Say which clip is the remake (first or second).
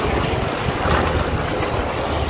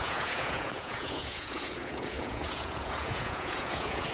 second